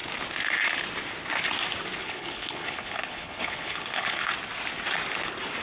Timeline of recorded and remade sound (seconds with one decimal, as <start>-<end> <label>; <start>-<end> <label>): 0.0-2.0 recorded; 2.0-4.3 remade; 4.3-5.6 recorded